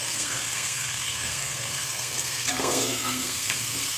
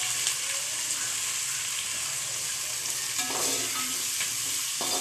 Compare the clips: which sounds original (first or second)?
second